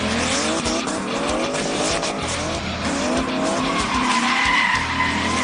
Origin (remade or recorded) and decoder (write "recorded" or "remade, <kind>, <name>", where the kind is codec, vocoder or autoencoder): recorded